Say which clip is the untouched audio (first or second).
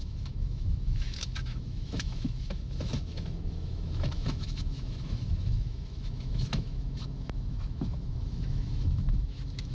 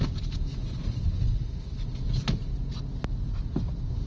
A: second